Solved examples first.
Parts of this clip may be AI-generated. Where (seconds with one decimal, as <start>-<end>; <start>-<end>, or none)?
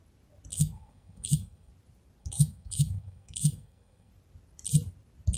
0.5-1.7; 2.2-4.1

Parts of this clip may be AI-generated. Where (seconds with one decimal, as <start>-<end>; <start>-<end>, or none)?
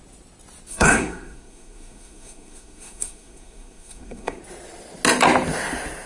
0.7-4.4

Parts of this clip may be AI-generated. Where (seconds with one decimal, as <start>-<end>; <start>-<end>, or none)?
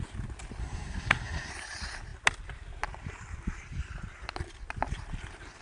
0.6-1.5